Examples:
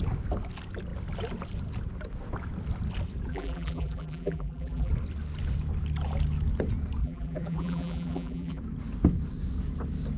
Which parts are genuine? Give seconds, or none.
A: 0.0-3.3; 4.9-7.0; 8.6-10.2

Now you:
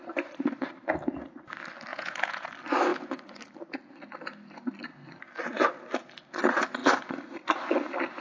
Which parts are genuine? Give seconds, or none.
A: 0.0-1.9; 2.5-8.2